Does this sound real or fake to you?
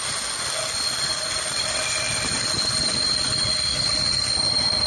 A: real